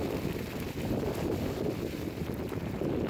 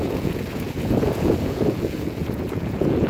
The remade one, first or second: second